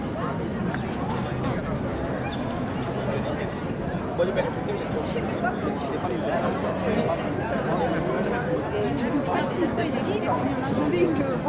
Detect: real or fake real